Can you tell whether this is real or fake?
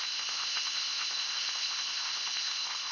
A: fake